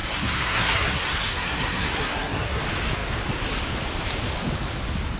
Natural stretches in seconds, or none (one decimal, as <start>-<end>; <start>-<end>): 2.6-5.2